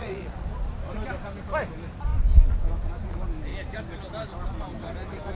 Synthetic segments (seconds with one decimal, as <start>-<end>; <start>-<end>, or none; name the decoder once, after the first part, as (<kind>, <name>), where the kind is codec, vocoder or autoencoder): 0.0-0.6 (vocoder, Vocos)